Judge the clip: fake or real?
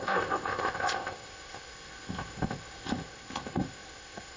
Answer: fake